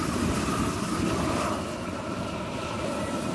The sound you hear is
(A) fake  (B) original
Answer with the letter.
B